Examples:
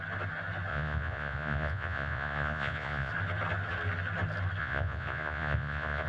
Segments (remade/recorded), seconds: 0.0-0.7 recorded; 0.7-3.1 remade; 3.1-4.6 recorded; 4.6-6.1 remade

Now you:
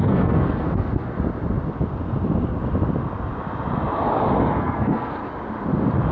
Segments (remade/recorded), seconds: 0.0-1.1 remade; 1.1-4.6 recorded; 4.6-5.2 remade; 5.2-6.1 recorded

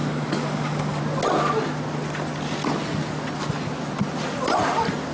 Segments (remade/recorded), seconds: 0.0-1.0 remade; 1.0-5.1 recorded

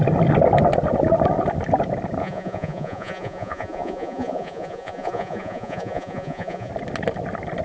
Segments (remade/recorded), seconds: 0.0-2.2 recorded; 2.2-6.7 remade; 6.7-7.6 recorded

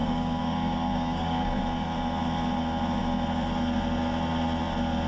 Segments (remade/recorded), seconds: 0.0-1.6 remade; 1.6-5.1 recorded

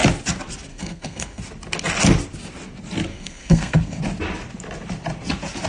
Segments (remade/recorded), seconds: 0.0-0.7 recorded; 0.7-1.4 remade; 1.4-3.1 recorded; 3.1-4.0 remade; 4.0-5.7 recorded

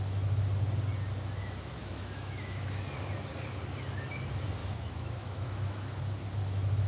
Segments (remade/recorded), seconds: 0.0-1.8 recorded; 1.8-2.8 remade; 2.8-4.6 recorded; 4.6-6.0 remade; 6.0-6.9 recorded

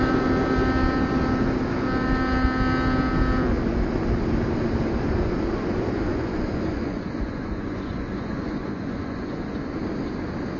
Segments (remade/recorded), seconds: 0.0-6.1 recorded; 6.1-9.4 remade; 9.4-10.6 recorded